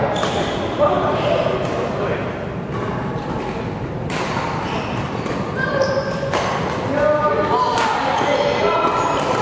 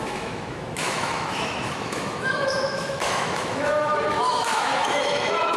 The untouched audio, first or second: first